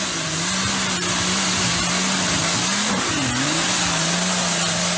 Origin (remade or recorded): recorded